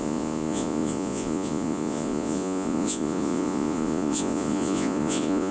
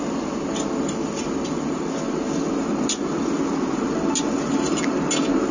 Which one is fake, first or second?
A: first